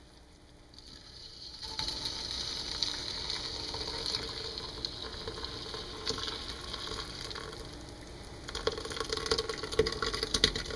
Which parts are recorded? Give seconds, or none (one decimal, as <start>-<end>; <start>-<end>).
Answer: 0.0-1.0; 1.9-10.8